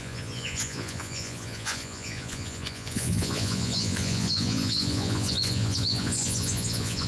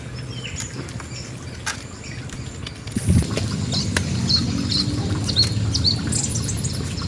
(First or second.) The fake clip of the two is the first